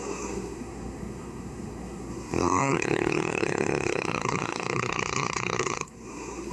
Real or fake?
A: fake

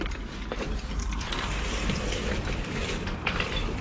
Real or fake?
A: fake